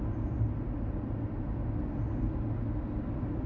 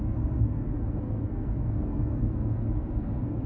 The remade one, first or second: second